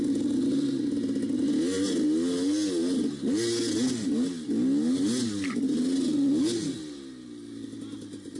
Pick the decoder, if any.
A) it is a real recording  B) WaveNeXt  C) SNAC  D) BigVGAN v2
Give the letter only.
A